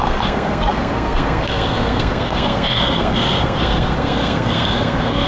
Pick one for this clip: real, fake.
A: fake